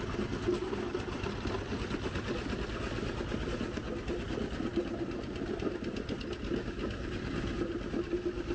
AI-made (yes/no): no